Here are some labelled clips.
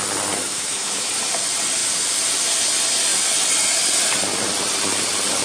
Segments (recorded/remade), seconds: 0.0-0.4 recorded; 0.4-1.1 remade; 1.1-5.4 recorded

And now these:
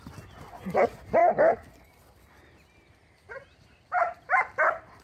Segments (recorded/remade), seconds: 0.0-5.0 recorded

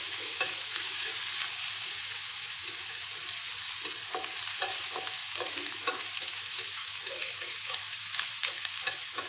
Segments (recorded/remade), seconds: 0.0-1.1 remade; 1.1-1.7 recorded; 1.7-3.1 remade; 3.1-4.8 recorded; 4.8-9.3 remade

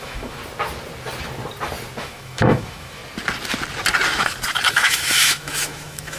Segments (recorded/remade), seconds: 0.0-0.4 remade; 0.4-2.0 recorded; 2.0-3.0 remade; 3.0-4.7 recorded; 4.7-6.2 remade

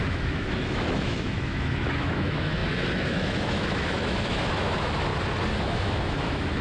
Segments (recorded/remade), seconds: 0.0-5.1 remade; 5.1-5.6 recorded; 5.6-6.6 remade

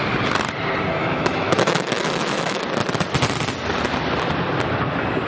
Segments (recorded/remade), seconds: 0.0-1.0 recorded; 1.0-2.6 remade; 2.6-5.3 recorded

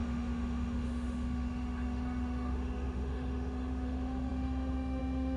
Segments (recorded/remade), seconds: 0.0-5.4 remade